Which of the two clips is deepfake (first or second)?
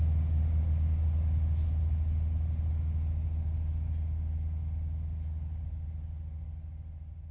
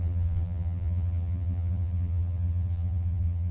second